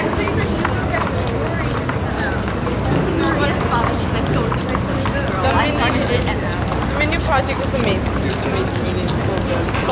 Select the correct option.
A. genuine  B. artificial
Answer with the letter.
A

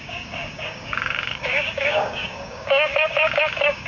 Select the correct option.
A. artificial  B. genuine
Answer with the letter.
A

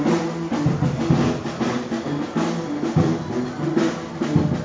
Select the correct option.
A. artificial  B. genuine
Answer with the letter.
B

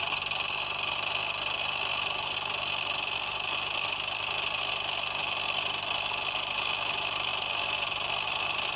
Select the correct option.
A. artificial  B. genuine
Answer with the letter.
B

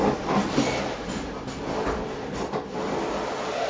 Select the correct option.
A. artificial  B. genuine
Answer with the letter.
B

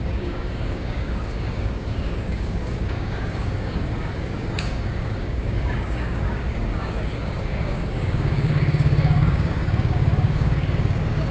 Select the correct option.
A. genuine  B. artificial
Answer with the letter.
B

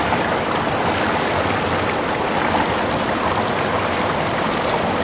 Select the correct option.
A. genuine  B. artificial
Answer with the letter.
A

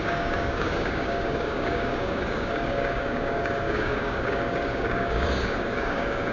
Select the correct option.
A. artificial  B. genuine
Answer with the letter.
A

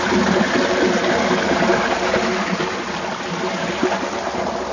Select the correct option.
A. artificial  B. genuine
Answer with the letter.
B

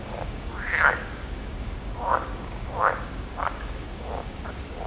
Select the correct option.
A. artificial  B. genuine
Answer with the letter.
A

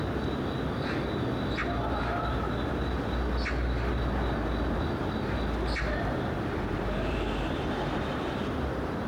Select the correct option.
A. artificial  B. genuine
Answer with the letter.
B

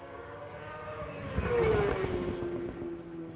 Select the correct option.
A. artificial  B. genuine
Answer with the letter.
A